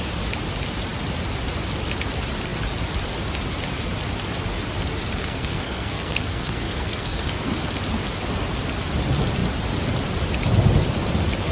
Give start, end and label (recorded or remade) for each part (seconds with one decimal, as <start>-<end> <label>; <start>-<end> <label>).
0.0-5.2 recorded; 5.2-7.7 remade; 7.7-11.5 recorded